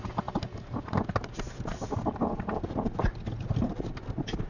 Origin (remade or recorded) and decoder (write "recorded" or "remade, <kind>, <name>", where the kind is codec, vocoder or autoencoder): recorded